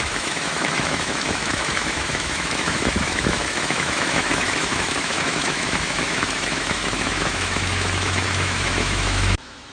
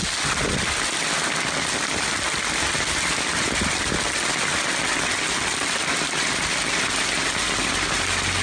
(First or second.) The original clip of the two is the second